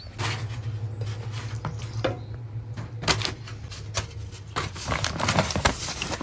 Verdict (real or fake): real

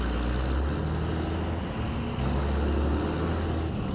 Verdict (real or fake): real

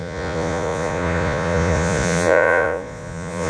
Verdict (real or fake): fake